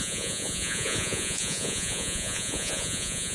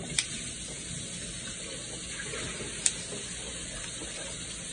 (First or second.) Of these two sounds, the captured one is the second